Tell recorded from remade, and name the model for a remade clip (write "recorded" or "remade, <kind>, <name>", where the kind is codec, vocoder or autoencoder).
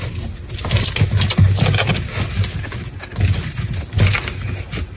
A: recorded